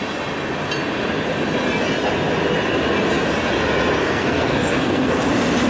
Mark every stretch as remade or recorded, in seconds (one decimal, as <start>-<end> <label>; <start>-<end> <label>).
0.0-4.0 recorded; 4.0-5.2 remade; 5.2-5.7 recorded